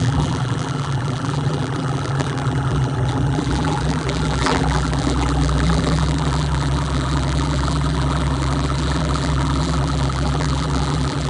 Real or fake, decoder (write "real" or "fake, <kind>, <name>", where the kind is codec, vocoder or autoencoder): fake, vocoder, BigVGAN v2